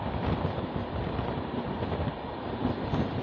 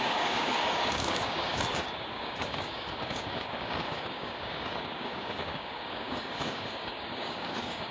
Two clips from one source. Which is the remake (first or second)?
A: second